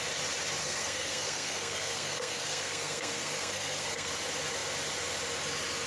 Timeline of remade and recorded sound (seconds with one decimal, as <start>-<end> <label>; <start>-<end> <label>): 0.0-0.6 recorded; 0.6-4.1 remade; 4.1-5.9 recorded